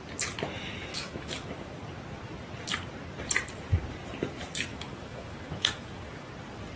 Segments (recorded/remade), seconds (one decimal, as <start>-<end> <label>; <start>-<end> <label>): 0.0-0.9 recorded; 0.9-1.7 remade; 1.7-4.7 recorded; 4.7-6.3 remade; 6.3-6.8 recorded

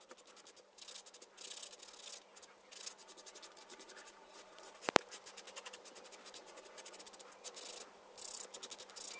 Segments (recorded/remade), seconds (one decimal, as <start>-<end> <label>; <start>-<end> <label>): 0.0-3.0 recorded; 3.0-4.8 remade; 4.8-6.4 recorded; 6.4-7.0 remade; 7.0-9.2 recorded

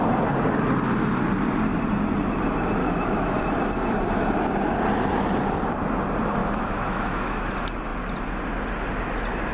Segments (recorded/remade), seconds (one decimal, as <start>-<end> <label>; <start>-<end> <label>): 0.0-2.8 recorded; 2.8-3.4 remade; 3.4-6.4 recorded; 6.4-7.5 remade; 7.5-9.5 recorded

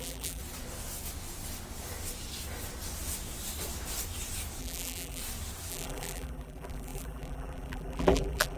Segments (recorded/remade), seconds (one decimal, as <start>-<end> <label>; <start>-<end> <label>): 0.0-0.4 remade; 0.4-4.6 recorded; 4.6-5.2 remade; 5.2-5.7 recorded; 5.7-8.6 remade

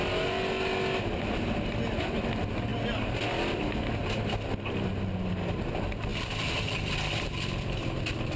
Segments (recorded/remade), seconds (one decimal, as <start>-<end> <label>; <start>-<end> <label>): 0.0-6.1 recorded; 6.1-8.4 remade